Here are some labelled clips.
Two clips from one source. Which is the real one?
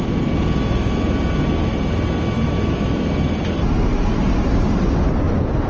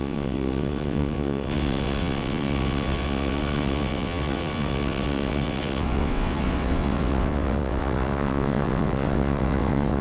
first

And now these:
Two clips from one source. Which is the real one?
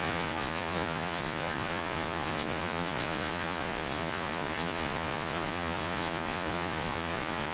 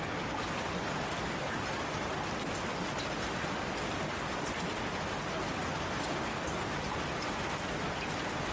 second